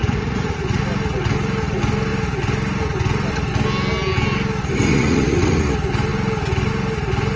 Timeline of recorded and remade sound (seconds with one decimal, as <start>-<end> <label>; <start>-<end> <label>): 0.0-0.8 remade; 0.8-4.9 recorded; 4.9-5.6 remade; 5.6-7.4 recorded